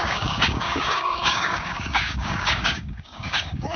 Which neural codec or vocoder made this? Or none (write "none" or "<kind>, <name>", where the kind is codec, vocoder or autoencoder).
codec, DAC